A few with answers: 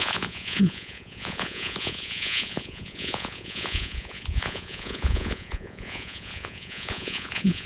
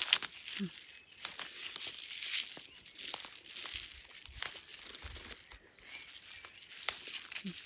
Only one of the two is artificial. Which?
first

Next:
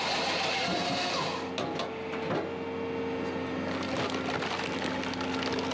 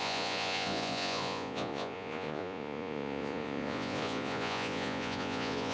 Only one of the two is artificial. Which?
second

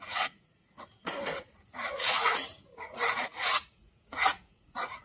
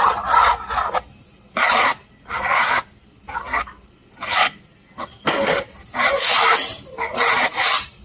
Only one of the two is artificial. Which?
first